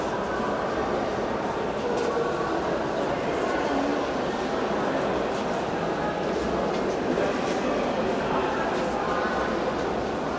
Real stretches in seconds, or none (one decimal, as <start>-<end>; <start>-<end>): 0.0-10.4